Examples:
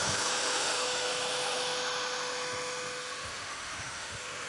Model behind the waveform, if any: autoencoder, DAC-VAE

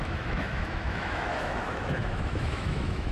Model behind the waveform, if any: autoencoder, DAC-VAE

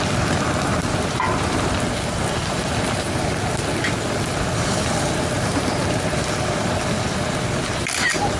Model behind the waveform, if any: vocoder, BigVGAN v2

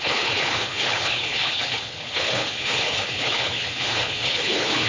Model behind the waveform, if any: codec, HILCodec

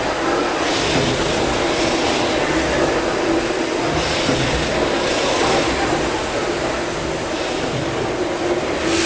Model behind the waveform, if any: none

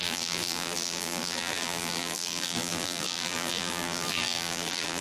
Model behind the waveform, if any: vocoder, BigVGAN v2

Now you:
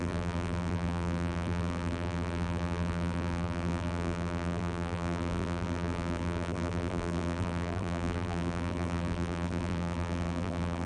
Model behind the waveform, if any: vocoder, BigVGAN v2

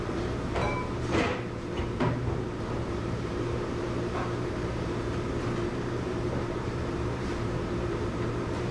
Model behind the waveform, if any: vocoder, BigVGAN v2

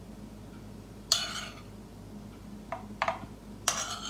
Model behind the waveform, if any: none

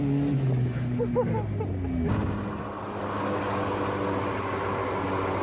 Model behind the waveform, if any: none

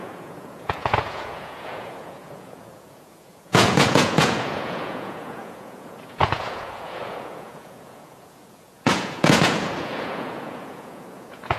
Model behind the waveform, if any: vocoder, Vocos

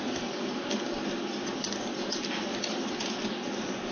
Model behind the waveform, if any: none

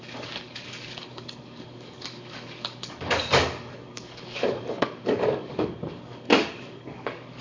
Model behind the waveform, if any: codec, DAC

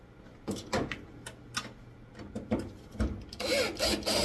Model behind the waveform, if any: none